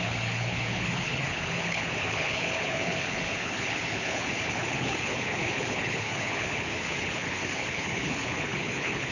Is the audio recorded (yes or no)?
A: no